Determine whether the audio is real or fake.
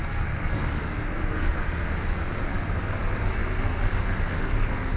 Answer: fake